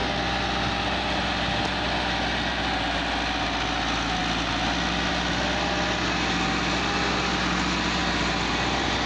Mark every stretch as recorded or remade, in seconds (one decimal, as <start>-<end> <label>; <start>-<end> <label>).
0.0-9.1 recorded